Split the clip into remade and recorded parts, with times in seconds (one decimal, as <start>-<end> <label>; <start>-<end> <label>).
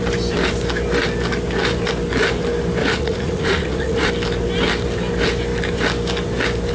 0.0-2.8 recorded; 2.8-4.1 remade; 4.1-6.7 recorded